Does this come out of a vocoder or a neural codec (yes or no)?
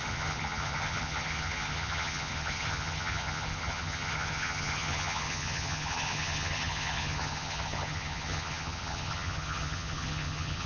yes